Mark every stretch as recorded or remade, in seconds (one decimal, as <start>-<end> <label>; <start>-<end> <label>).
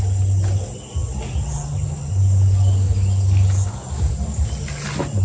0.0-5.2 recorded